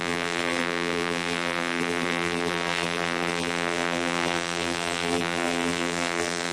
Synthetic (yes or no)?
yes